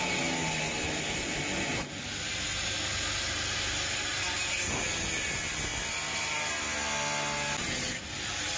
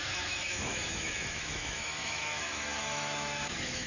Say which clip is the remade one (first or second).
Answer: second